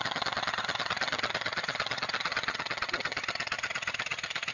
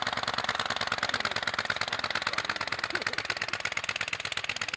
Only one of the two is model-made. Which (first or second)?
first